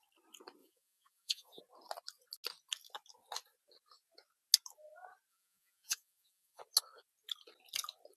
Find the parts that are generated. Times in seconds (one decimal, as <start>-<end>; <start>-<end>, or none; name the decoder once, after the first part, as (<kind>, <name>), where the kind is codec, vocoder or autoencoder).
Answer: 0.6-1.6 (vocoder, Vocos); 5.3-6.6